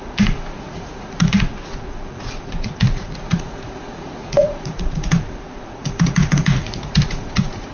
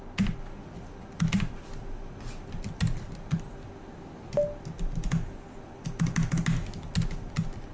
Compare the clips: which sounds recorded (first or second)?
second